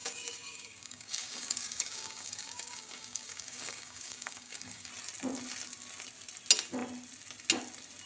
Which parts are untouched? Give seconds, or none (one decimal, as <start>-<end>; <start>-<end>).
4.9-8.1